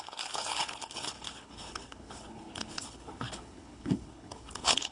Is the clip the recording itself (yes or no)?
no